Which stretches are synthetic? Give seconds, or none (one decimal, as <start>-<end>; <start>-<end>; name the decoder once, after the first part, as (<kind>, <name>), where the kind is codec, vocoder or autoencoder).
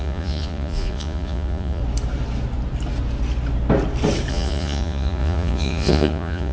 0.0-1.8 (vocoder, Vocos); 4.3-6.5